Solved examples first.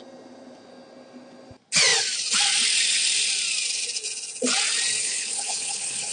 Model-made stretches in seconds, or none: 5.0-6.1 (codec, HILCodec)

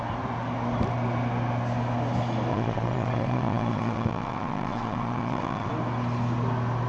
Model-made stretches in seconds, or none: 2.5-5.7 (vocoder, Vocos)

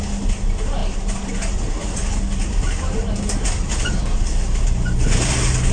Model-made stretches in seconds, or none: none

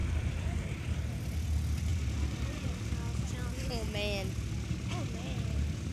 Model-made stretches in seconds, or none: 0.0-1.2 (vocoder, BigVGAN v2); 1.9-2.9

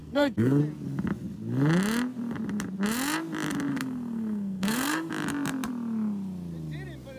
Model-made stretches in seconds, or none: 0.0-0.6 (codec, SNAC); 3.7-5.1

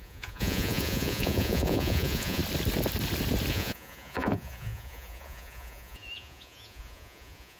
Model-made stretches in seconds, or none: 0.0-2.4 (vocoder, Vocos); 3.5-7.6

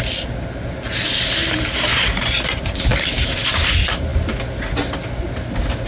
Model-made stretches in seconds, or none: none